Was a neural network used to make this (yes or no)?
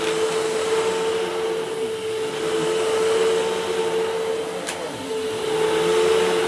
no